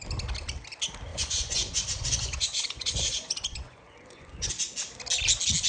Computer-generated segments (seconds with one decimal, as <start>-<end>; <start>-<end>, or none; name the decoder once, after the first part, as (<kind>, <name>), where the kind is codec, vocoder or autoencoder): 1.1-4.5 (vocoder, Vocos)